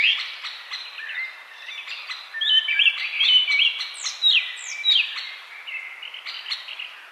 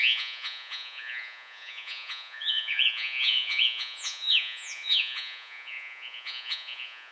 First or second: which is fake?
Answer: second